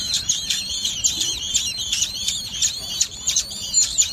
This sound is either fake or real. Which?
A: fake